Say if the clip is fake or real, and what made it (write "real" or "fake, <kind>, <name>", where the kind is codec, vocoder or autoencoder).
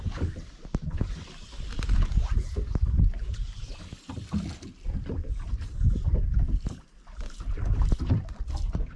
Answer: real